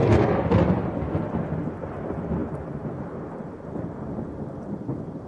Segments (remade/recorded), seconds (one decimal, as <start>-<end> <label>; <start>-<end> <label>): 0.0-2.4 recorded; 2.4-2.9 remade; 2.9-5.3 recorded